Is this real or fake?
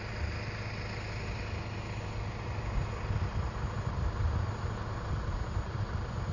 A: real